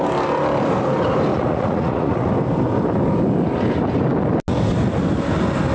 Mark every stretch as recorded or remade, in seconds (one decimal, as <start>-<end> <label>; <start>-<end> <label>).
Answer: 0.0-1.3 recorded; 1.3-2.3 remade; 2.3-5.7 recorded